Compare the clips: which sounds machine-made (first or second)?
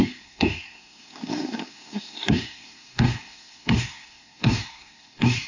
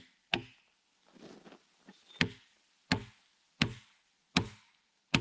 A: first